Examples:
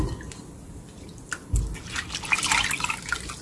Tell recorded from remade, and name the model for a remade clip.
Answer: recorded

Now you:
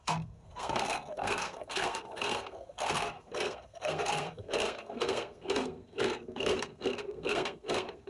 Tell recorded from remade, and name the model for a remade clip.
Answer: remade, codec, SNAC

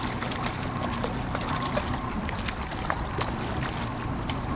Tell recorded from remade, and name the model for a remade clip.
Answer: recorded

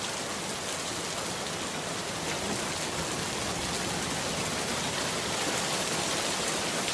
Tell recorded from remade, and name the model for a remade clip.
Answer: recorded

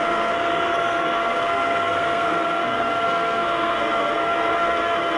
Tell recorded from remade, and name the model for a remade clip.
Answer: remade, codec, SNAC